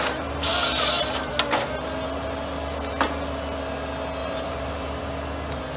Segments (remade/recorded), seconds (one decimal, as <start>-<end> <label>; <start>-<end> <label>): 0.0-4.2 recorded; 4.2-5.0 remade; 5.0-5.8 recorded